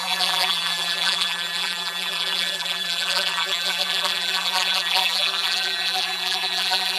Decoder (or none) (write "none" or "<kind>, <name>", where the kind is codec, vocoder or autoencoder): vocoder, BigVGAN v2